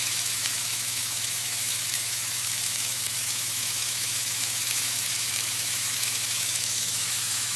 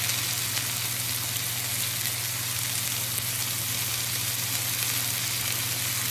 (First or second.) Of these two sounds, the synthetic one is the first